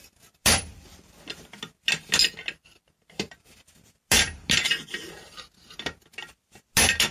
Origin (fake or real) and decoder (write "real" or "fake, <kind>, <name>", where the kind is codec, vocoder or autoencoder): real